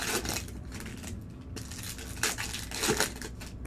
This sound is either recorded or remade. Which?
recorded